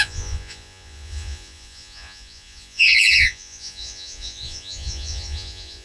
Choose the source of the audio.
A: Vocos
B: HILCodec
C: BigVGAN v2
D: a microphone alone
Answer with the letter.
A